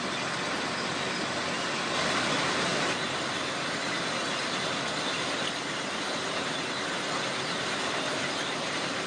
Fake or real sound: real